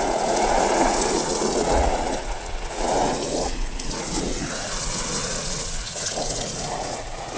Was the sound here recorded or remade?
remade